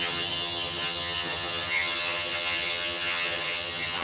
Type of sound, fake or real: fake